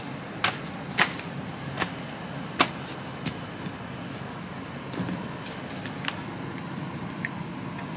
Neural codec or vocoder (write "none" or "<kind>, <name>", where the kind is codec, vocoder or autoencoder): none